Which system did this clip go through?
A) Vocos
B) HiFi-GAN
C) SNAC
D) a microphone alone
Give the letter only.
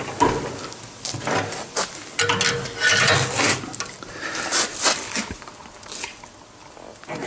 D